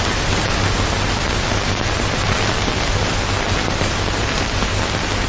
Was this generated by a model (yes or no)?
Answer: no